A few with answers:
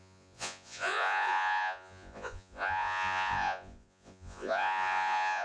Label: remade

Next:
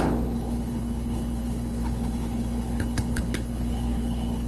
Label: remade